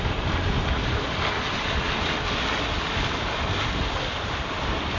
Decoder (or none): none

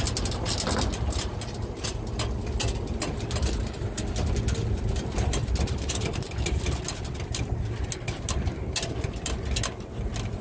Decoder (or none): none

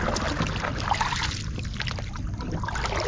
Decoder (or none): none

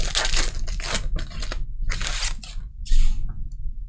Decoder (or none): none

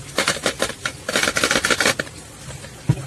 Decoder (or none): none